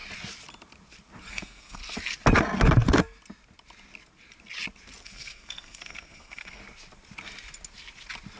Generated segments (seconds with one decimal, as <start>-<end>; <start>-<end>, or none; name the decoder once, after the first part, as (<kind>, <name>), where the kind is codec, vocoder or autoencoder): 1.3-1.8 (codec, SNAC); 5.0-6.6